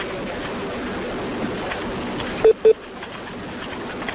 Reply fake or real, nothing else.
real